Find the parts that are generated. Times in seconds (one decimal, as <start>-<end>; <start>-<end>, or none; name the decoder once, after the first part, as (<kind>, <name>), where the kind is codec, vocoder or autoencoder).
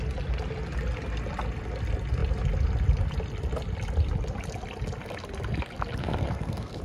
6.0-6.8 (codec, SNAC)